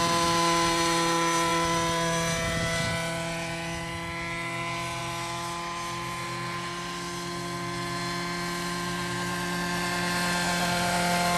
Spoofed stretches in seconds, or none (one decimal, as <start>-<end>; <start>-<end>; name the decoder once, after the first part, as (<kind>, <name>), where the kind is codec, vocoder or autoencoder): none